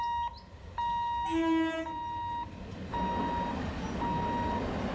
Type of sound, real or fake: real